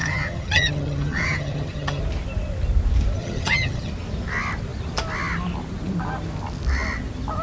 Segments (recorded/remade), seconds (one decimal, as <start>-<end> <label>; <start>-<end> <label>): 0.0-2.0 remade; 2.0-3.2 recorded; 3.2-3.9 remade; 3.9-7.4 recorded